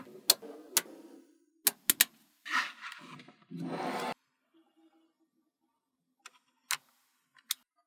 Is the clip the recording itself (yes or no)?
yes